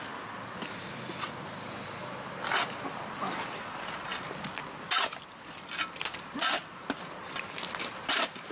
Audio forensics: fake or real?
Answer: real